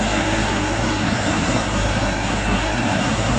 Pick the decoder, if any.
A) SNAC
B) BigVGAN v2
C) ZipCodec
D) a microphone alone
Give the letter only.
A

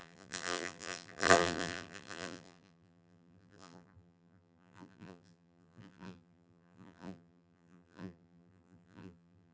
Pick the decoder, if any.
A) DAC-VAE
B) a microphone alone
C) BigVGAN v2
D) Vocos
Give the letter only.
C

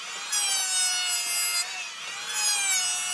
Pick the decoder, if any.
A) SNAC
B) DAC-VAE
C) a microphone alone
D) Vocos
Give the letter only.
C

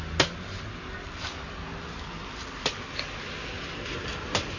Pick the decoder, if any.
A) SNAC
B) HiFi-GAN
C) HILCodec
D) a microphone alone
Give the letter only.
D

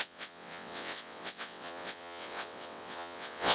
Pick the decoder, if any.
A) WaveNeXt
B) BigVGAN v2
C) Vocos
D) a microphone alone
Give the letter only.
A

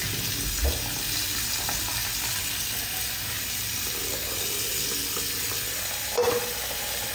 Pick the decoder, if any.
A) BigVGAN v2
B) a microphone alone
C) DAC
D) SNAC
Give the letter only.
B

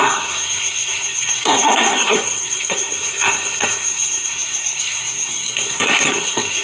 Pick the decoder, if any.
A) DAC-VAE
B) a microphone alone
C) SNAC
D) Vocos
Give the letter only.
C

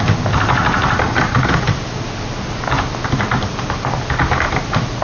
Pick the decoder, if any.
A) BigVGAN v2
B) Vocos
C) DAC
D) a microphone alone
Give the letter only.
D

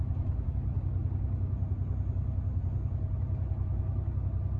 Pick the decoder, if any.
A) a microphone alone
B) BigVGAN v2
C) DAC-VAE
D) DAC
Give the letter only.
A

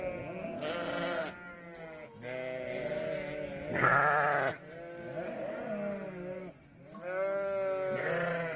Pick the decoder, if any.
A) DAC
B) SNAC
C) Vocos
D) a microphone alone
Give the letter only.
D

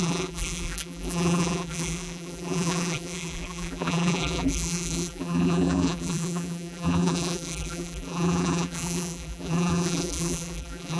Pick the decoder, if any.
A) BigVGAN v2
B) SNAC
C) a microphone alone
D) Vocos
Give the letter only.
A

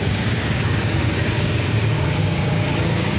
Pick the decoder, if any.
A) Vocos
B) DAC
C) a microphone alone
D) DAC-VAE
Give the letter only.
B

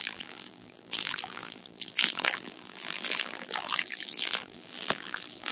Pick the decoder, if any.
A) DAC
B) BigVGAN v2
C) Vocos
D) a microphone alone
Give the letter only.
B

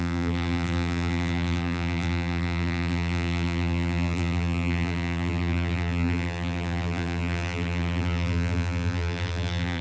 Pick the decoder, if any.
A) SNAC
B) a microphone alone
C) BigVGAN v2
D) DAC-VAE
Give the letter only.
C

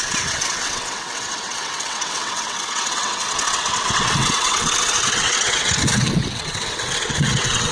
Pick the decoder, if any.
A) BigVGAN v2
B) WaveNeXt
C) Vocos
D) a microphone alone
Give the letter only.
B